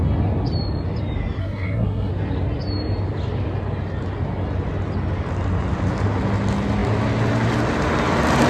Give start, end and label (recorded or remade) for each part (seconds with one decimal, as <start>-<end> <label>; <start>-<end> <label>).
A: 0.0-1.4 recorded; 1.4-2.1 remade; 2.1-8.5 recorded

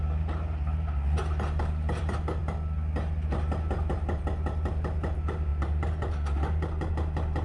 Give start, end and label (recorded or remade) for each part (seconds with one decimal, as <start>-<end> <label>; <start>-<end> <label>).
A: 0.0-7.4 recorded